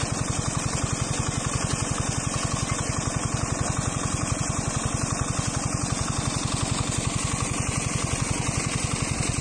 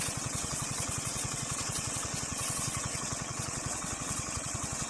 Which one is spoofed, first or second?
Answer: second